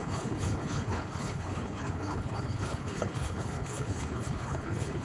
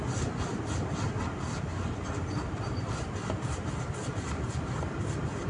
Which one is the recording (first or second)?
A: second